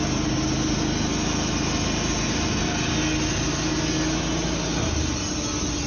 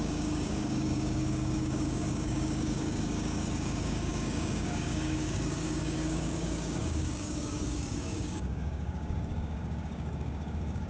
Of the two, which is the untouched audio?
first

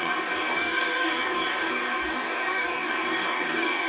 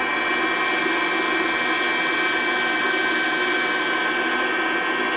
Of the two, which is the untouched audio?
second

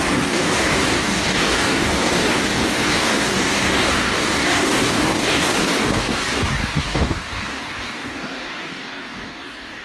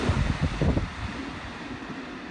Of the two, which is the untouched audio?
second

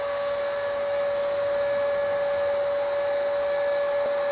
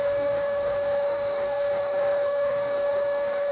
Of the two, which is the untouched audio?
first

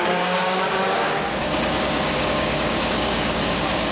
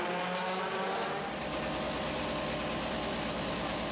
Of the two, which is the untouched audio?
second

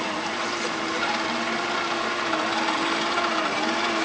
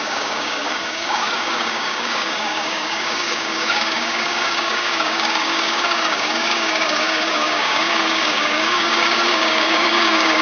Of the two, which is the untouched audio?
first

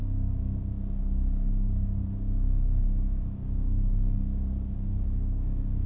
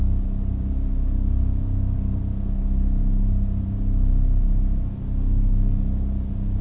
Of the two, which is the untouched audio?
second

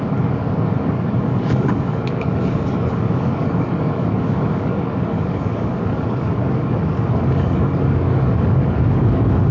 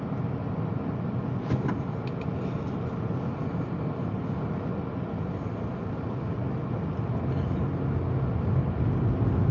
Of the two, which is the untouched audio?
second